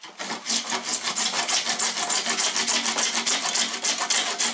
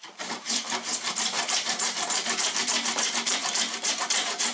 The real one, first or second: first